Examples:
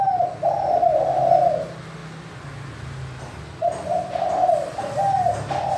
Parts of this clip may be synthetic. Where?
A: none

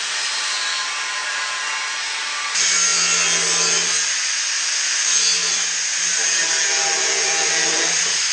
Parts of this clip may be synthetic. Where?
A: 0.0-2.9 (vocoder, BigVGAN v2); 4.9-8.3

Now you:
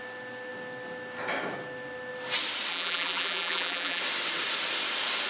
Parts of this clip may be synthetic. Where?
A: 2.7-4.0 (vocoder, BigVGAN v2)